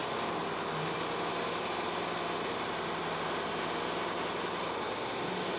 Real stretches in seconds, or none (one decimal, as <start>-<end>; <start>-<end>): 0.0-5.6